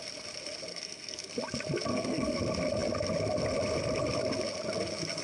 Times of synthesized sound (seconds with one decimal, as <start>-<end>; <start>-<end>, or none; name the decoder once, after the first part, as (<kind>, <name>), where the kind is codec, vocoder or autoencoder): 0.7-1.3 (codec, SNAC); 1.9-2.4